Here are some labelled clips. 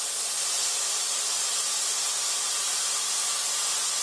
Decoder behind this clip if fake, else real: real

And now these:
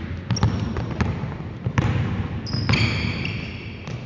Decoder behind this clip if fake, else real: real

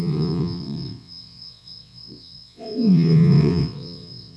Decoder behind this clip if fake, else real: fake, vocoder, WaveNeXt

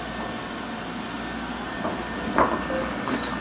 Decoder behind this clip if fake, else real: real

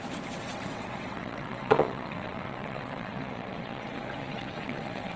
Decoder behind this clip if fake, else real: fake, vocoder, WaveNeXt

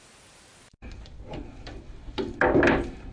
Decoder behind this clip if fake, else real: real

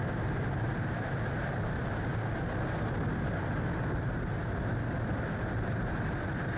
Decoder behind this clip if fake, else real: real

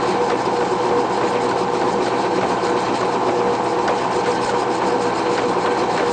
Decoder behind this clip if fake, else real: real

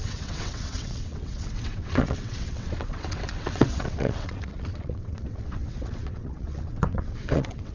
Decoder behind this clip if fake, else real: fake, vocoder, WaveNeXt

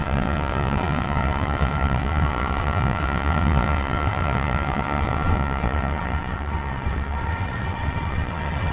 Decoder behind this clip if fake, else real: fake, vocoder, WaveNeXt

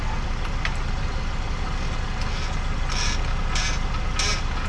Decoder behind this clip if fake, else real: real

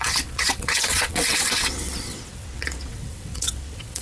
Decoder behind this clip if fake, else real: fake, vocoder, WaveNeXt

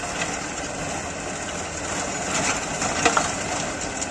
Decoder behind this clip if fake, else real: real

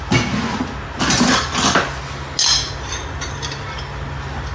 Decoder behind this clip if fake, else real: real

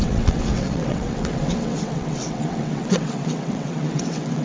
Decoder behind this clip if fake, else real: fake, vocoder, WaveNeXt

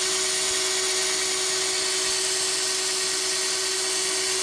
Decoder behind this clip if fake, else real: real